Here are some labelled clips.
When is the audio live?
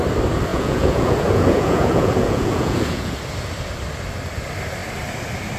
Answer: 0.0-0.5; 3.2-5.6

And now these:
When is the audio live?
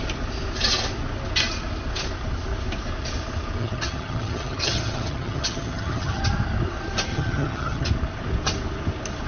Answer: 0.0-3.6; 6.2-7.1; 7.9-9.3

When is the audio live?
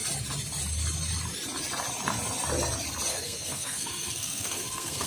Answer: 0.0-3.1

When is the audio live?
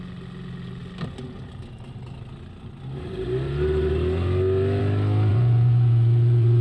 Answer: 0.0-5.3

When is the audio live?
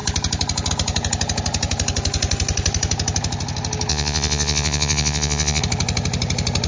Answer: 0.0-3.9; 5.6-6.7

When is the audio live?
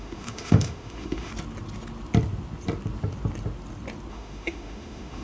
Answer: 1.3-4.1